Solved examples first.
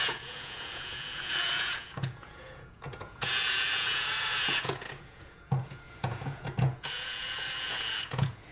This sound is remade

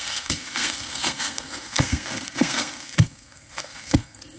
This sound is remade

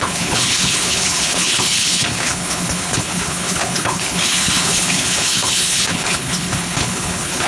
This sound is remade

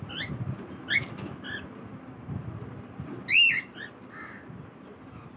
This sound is recorded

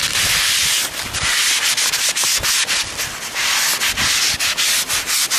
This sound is recorded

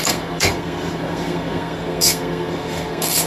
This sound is remade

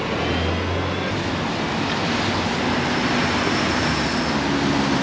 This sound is recorded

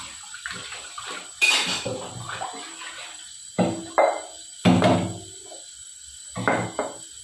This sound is recorded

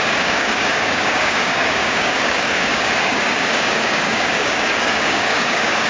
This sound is remade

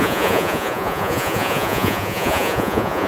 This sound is remade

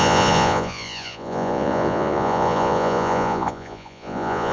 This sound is remade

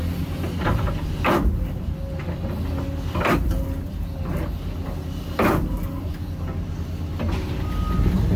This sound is recorded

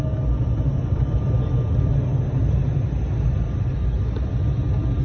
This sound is recorded